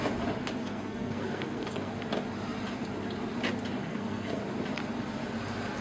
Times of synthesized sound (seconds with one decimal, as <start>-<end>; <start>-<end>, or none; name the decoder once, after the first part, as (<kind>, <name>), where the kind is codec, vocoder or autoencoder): 0.6-1.9 (codec, SNAC); 3.8-4.4